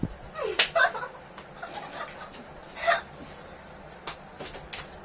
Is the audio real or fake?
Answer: real